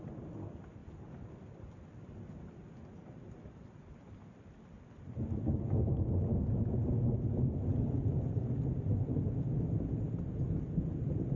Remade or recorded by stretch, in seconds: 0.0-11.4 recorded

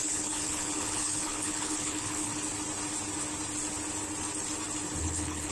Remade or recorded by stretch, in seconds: 0.0-2.3 remade; 2.3-5.0 recorded; 5.0-5.5 remade

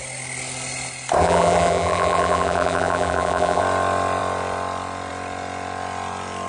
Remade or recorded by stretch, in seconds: 0.0-1.2 recorded; 1.2-3.6 remade; 3.6-6.5 recorded

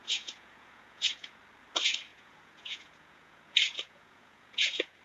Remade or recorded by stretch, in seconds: 0.0-1.4 remade; 1.4-2.1 recorded; 2.1-5.0 remade

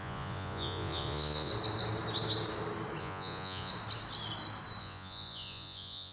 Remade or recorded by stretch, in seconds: 0.0-1.5 remade; 1.5-3.0 recorded; 3.0-3.7 remade; 3.7-4.8 recorded; 4.8-6.1 remade